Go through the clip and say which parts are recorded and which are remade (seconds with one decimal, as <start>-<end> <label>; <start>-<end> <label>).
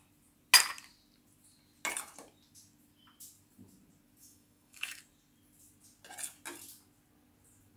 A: 0.0-4.2 recorded; 4.2-5.0 remade; 5.0-7.8 recorded